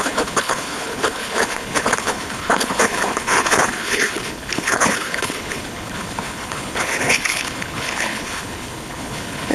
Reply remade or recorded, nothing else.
remade